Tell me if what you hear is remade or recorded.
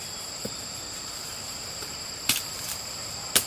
remade